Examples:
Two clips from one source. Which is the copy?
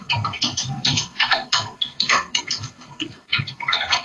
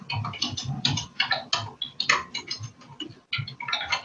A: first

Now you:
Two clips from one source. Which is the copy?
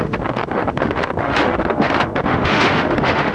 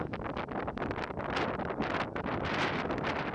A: first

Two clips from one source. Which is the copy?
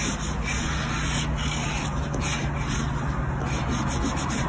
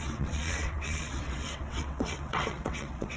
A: second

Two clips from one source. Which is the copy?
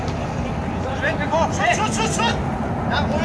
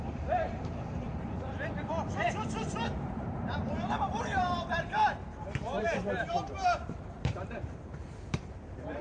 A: second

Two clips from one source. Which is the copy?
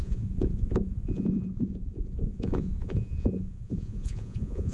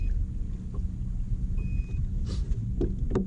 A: first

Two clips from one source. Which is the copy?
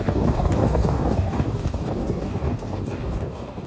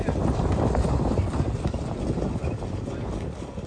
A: first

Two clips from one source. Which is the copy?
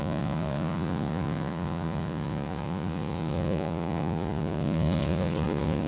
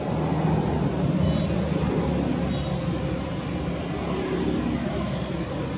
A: first